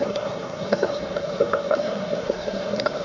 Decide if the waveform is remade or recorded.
remade